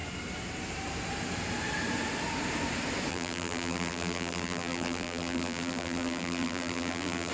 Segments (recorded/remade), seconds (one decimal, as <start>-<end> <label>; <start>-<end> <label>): 0.0-3.1 recorded; 3.1-7.3 remade